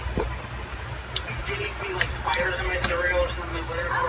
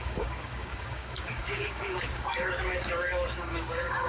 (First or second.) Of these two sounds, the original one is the first